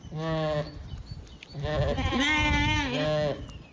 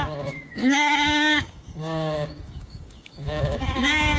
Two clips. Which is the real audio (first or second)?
first